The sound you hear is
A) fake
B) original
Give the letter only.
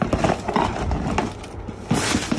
B